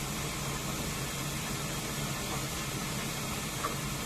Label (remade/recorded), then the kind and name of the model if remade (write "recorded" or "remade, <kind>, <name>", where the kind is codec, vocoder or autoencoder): recorded